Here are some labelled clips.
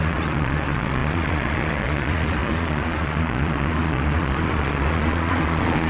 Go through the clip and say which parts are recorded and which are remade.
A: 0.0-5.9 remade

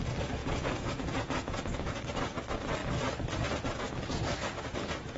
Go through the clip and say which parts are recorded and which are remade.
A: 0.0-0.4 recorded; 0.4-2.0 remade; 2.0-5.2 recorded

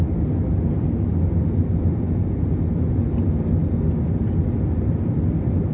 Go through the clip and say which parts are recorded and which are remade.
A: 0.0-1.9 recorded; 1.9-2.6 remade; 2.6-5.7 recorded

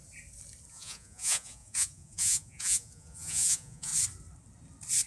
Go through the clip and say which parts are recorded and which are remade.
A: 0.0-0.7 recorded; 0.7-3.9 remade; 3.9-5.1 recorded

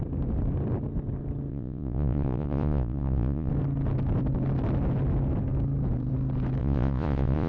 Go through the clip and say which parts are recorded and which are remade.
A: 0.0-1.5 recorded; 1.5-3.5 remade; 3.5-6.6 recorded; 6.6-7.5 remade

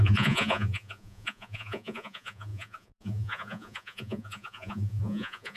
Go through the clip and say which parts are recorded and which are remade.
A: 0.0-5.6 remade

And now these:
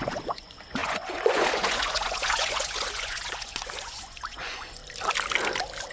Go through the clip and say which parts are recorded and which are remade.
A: 0.0-4.8 remade; 4.8-5.9 recorded

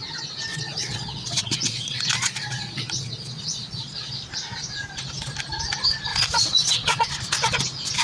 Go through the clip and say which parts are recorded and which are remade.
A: 0.0-0.5 recorded; 0.5-4.1 remade; 4.1-6.1 recorded; 6.1-7.1 remade; 7.1-8.0 recorded